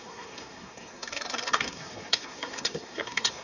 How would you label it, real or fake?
fake